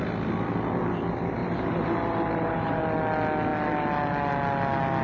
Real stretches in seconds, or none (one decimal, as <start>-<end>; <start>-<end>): 0.0-1.4; 2.8-5.0